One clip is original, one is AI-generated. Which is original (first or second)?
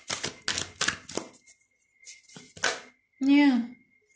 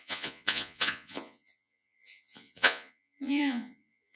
first